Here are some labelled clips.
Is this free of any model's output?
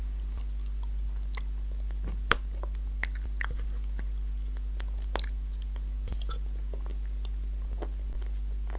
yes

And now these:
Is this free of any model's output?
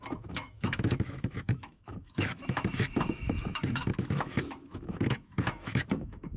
no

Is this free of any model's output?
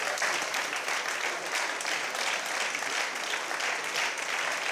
yes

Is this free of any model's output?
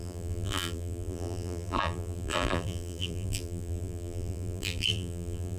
no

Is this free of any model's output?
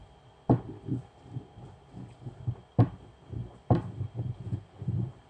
yes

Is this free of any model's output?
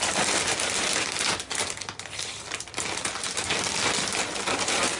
yes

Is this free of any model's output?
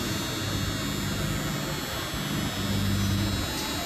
yes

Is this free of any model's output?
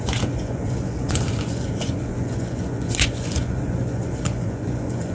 no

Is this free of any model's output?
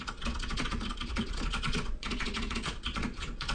no